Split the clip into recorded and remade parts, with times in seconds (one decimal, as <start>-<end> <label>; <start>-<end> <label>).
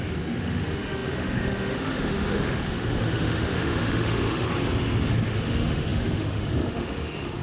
0.0-4.5 remade; 4.5-5.1 recorded; 5.1-7.4 remade